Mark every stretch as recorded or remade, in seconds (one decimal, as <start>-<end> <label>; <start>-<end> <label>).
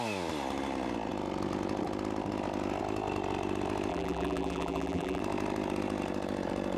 0.0-3.9 recorded; 3.9-5.2 remade; 5.2-6.8 recorded